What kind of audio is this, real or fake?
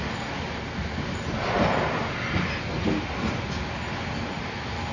real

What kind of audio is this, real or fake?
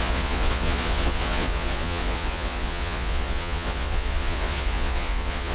fake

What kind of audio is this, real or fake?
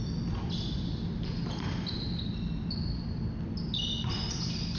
real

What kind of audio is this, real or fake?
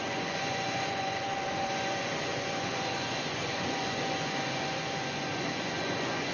fake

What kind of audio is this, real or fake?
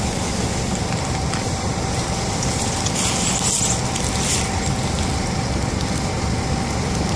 real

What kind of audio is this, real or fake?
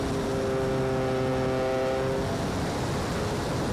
real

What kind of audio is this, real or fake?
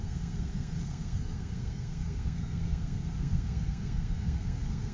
fake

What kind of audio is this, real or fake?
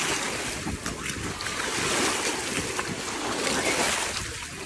real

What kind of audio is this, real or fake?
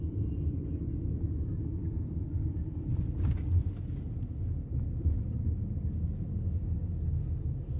real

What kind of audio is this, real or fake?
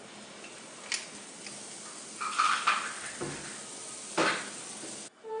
real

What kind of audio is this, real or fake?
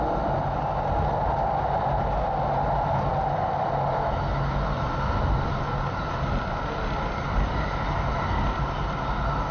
real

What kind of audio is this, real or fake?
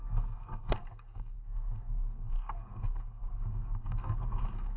fake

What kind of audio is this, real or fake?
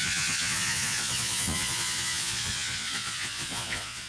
fake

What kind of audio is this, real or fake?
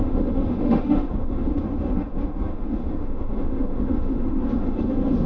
fake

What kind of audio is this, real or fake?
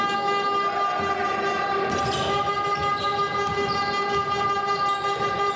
real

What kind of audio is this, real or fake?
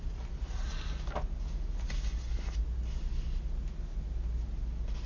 real